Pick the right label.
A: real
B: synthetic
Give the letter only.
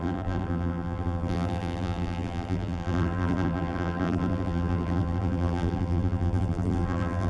B